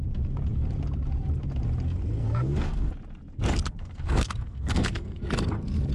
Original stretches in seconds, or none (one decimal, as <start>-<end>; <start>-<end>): 0.0-2.2; 2.9-3.7; 5.3-5.9